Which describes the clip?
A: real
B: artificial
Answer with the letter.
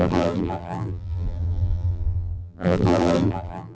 B